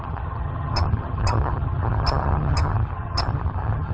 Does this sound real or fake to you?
fake